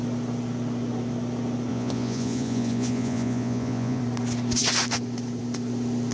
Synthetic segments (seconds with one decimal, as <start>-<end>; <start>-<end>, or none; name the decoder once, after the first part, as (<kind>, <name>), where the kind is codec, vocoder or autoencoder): 1.7-4.0 (vocoder, Vocos)